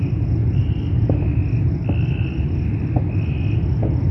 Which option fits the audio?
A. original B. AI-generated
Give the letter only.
A